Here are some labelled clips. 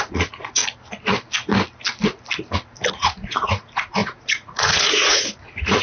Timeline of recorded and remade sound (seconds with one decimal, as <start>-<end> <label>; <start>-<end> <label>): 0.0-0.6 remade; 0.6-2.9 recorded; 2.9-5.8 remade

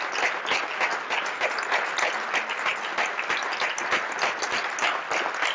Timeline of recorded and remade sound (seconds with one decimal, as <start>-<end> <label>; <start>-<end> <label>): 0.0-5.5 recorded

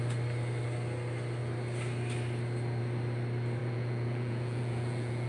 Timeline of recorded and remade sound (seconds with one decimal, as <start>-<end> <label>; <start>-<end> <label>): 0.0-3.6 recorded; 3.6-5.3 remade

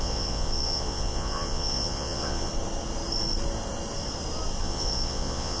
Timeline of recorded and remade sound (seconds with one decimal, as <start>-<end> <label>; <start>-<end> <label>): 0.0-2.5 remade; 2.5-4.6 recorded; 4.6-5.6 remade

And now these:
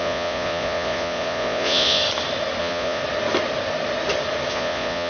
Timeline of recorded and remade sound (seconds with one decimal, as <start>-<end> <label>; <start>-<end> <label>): 0.0-2.0 remade; 2.0-2.6 recorded; 2.6-3.0 remade; 3.0-4.5 recorded; 4.5-5.1 remade

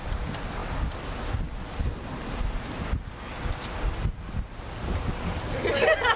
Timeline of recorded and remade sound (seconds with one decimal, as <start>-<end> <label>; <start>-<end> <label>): 0.0-6.2 recorded

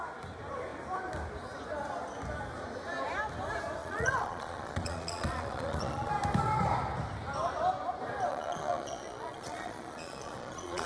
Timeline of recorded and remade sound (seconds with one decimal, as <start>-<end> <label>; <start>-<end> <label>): 0.0-3.8 recorded; 3.8-6.1 remade; 6.1-8.3 recorded; 8.3-10.9 remade

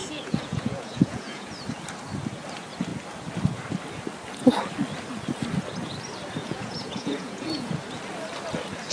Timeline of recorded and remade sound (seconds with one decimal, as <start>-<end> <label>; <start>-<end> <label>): 0.0-1.5 remade; 1.5-6.4 recorded; 6.4-7.7 remade; 7.7-8.9 recorded